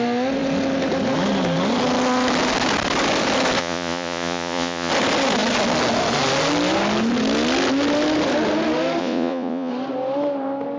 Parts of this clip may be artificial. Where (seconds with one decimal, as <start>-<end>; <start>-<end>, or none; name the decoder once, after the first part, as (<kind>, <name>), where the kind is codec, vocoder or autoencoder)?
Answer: 3.6-4.9 (vocoder, Vocos); 9.0-9.7